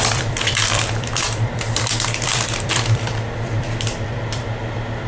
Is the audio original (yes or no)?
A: no